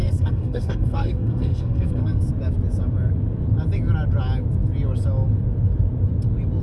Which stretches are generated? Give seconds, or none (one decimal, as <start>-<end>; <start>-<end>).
0.0-2.3